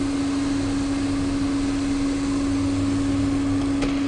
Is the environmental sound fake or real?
real